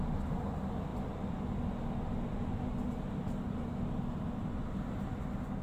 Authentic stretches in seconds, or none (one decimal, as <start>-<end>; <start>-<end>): 0.0-5.6